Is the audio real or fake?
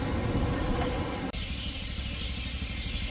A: real